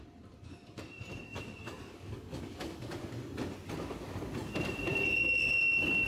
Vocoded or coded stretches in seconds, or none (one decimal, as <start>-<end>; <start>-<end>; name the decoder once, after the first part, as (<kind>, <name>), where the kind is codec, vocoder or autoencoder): 1.1-3.1 (codec, DAC)